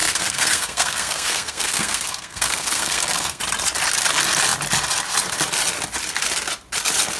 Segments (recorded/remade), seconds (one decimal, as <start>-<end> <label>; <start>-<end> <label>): 0.0-3.4 remade; 3.4-7.2 recorded